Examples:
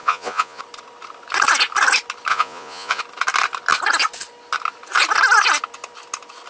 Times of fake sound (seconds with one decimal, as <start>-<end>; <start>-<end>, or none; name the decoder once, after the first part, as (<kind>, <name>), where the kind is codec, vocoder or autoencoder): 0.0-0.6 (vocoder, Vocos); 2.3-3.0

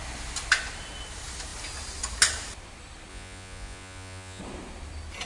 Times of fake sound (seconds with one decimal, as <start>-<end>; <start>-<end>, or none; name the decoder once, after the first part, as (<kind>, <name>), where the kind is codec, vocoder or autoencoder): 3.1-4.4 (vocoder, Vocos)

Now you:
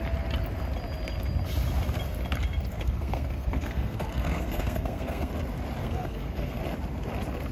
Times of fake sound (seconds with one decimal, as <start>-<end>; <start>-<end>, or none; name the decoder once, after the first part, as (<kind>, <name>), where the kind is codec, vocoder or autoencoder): 2.7-5.3 (codec, SNAC); 5.8-6.6